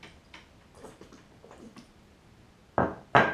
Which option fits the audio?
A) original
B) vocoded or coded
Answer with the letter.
B